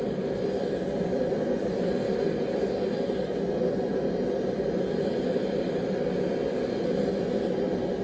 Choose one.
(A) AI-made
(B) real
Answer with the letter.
B